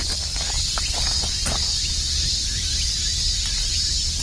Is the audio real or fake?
real